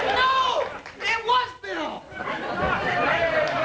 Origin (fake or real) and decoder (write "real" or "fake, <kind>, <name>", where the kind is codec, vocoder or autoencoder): real